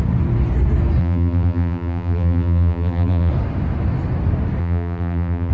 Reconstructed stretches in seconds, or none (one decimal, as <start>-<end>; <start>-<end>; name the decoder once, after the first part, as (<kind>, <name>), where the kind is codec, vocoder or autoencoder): 1.0-3.3 (vocoder, BigVGAN v2); 4.6-5.5